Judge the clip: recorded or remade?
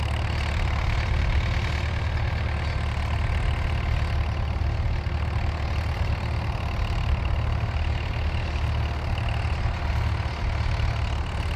recorded